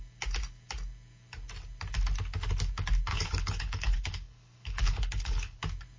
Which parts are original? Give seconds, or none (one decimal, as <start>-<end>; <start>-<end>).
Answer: 0.0-3.1; 5.6-6.0